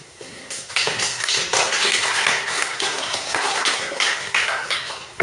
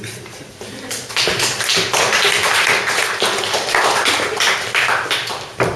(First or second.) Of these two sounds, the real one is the second